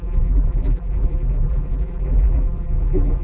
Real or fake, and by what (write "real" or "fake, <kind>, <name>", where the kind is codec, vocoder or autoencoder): fake, vocoder, BigVGAN v2